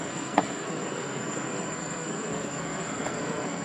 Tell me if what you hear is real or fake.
fake